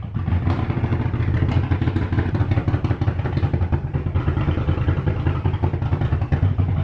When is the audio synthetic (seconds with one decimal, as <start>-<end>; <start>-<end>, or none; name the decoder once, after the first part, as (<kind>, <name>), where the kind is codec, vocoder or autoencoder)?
0.0-0.9 (vocoder, BigVGAN v2); 1.9-6.8